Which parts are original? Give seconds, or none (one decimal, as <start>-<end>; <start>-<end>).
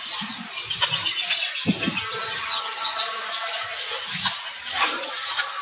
0.0-2.3; 3.0-4.5; 5.1-5.6